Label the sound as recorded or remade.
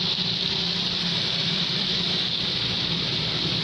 remade